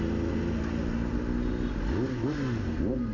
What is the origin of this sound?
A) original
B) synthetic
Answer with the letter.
A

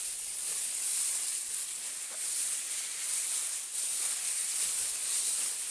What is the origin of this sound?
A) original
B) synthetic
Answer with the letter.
A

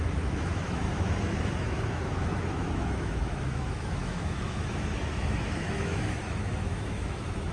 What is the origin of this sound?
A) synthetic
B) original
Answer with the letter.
A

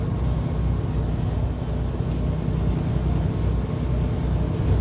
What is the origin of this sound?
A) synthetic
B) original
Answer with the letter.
B